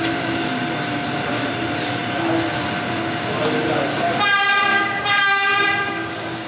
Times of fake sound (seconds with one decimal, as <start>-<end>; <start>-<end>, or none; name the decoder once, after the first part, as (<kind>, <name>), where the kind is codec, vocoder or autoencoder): 4.7-6.5 (codec, DAC)